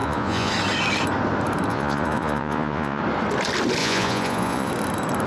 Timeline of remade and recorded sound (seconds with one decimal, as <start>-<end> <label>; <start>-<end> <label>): 0.0-0.5 remade; 0.5-1.7 recorded; 1.7-3.0 remade; 3.0-3.8 recorded; 3.8-4.7 remade; 4.7-5.3 recorded